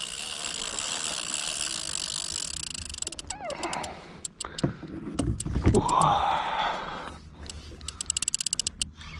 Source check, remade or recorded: recorded